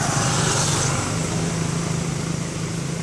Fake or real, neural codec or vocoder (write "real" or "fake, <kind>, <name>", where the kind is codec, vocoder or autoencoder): real